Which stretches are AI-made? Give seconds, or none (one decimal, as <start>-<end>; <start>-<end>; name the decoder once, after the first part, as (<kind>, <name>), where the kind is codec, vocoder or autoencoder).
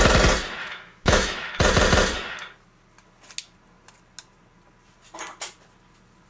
0.6-1.6 (autoencoder, DAC-VAE)